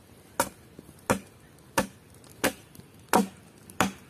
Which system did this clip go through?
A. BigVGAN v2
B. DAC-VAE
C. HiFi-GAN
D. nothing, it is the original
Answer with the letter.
D